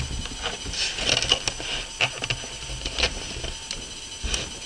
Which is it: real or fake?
real